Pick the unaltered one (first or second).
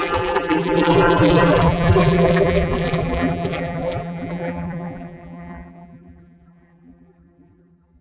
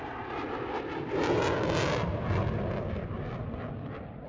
second